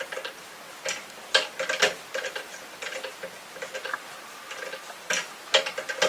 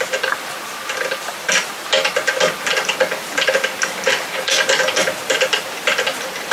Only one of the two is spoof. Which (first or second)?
second